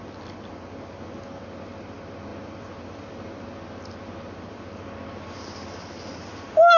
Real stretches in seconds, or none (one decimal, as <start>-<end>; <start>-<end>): 0.0-6.8